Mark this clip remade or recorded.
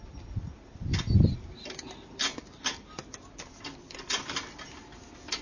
recorded